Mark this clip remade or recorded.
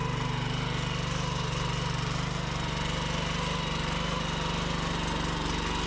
recorded